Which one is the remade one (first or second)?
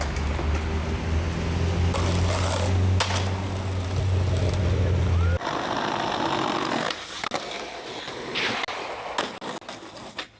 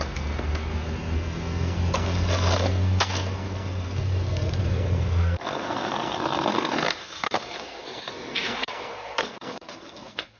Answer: second